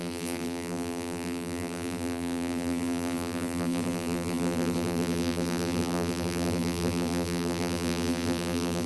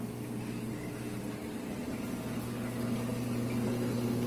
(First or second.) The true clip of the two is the second